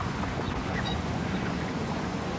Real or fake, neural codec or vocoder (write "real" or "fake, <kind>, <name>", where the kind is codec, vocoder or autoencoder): fake, vocoder, Vocos